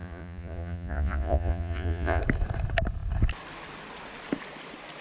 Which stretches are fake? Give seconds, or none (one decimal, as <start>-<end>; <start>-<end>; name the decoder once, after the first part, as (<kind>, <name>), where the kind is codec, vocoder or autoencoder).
0.0-2.2 (vocoder, Vocos)